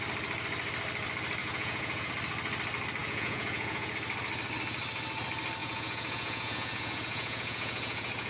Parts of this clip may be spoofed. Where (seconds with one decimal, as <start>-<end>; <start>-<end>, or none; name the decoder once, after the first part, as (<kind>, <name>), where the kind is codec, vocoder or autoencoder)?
1.4-2.1 (vocoder, Vocos); 3.0-3.9; 5.6-8.3